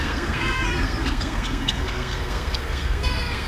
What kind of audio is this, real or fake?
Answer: fake